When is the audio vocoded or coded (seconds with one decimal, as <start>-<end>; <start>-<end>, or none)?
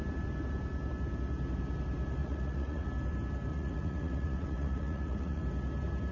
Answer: 2.2-2.9; 3.5-5.4